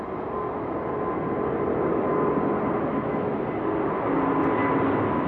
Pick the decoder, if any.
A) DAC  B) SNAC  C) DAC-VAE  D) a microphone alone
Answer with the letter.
D